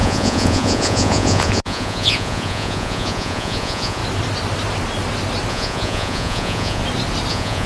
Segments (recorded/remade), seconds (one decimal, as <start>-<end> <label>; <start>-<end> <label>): 0.0-4.0 remade; 4.0-5.5 recorded; 5.5-6.8 remade; 6.8-7.3 recorded; 7.3-7.7 remade

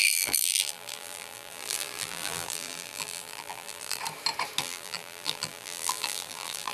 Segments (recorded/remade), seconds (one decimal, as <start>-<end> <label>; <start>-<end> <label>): 0.0-4.0 remade; 4.0-4.6 recorded; 4.6-6.7 remade

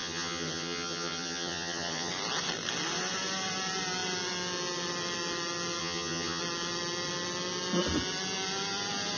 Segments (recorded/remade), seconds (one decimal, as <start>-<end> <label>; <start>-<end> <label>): 0.0-2.1 remade; 2.1-5.8 recorded; 5.8-6.4 remade; 6.4-9.2 recorded

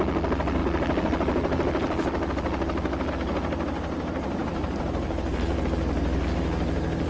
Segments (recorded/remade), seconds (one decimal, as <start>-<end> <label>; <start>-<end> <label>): 0.0-4.4 recorded; 4.4-5.6 remade; 5.6-7.1 recorded

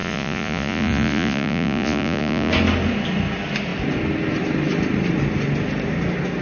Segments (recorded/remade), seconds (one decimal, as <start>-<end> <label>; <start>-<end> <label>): 0.0-2.5 remade; 2.5-6.4 recorded